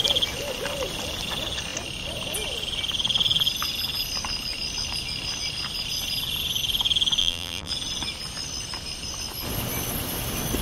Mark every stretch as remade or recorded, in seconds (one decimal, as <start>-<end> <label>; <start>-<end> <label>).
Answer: 0.0-7.2 recorded; 7.2-7.7 remade; 7.7-10.6 recorded